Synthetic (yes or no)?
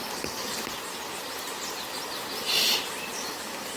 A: no